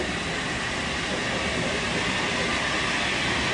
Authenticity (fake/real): real